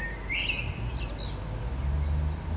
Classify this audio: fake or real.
real